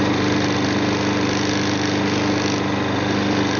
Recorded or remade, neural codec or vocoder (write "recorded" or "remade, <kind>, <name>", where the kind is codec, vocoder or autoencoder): recorded